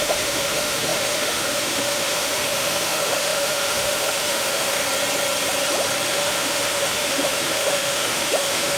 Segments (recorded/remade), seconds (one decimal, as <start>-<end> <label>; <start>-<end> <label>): 0.0-4.8 remade; 4.8-6.1 recorded; 6.1-8.8 remade